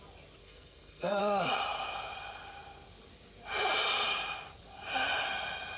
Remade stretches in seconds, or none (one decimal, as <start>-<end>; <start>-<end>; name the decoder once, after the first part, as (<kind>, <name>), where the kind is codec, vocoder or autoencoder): 0.4-1.2 (codec, SNAC)